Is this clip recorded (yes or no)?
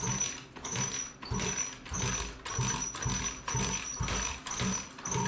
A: yes